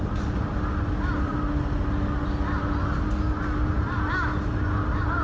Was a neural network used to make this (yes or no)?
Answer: no